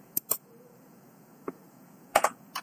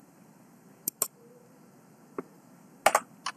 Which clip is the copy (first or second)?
first